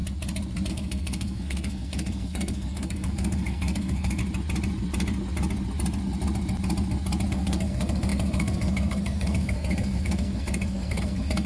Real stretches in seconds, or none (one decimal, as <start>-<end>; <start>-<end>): 0.0-0.7; 4.2-7.3